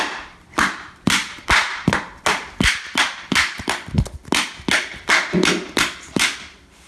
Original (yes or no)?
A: yes